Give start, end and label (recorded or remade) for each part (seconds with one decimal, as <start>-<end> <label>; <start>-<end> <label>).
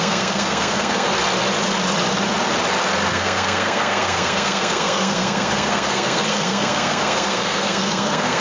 0.0-1.1 remade; 1.1-3.1 recorded; 3.1-8.4 remade